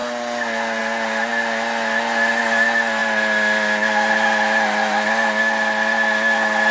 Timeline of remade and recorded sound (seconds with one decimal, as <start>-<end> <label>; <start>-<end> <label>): 0.0-6.7 recorded